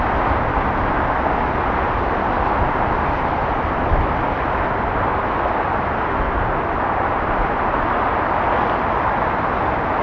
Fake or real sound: real